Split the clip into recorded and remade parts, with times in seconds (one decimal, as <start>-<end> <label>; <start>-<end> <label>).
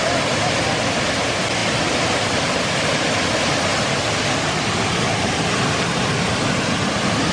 0.0-7.3 recorded